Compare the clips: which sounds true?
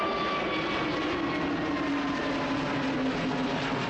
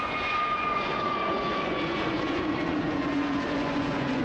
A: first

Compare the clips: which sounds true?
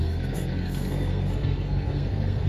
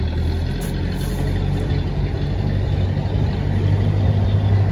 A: second